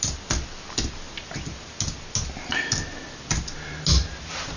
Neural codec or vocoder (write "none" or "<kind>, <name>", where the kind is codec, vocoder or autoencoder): none